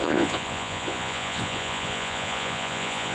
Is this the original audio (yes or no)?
no